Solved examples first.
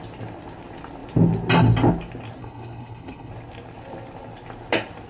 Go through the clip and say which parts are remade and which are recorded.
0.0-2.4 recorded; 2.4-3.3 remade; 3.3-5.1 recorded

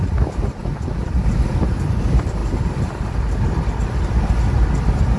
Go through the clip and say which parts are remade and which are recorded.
0.0-5.2 recorded

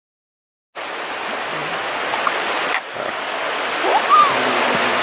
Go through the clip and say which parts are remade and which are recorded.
0.0-5.0 recorded

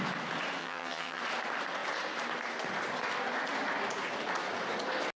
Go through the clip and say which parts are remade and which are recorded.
0.0-0.6 recorded; 0.6-1.2 remade; 1.2-5.2 recorded

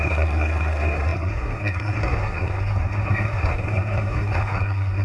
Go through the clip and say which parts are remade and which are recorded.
0.0-5.0 remade

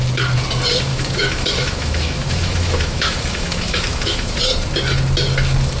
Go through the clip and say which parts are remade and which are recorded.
0.0-0.9 recorded; 0.9-4.4 remade; 4.4-5.8 recorded